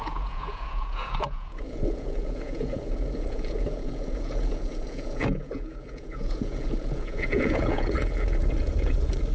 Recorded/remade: remade